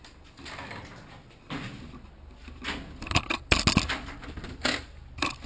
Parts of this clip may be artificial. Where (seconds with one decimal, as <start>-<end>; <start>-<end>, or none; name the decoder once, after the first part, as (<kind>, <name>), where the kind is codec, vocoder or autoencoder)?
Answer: none